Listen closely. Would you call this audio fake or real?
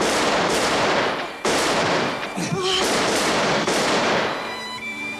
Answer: fake